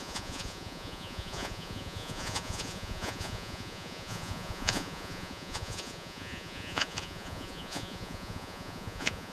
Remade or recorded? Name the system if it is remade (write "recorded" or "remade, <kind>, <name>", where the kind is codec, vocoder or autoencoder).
remade, vocoder, Vocos